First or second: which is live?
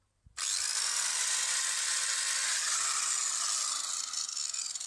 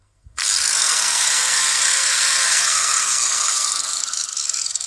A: first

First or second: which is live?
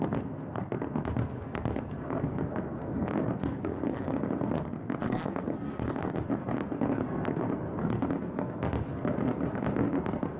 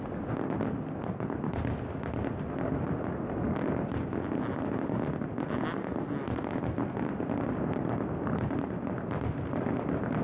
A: second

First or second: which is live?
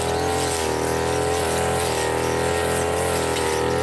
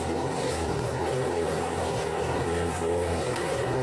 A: first